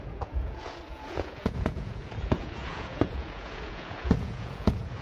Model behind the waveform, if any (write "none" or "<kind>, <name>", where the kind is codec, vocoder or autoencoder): vocoder, Vocos